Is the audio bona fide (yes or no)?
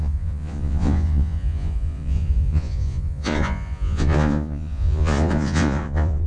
no